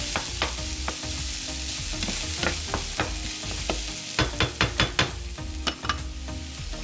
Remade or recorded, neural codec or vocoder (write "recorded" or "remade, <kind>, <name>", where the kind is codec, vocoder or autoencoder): recorded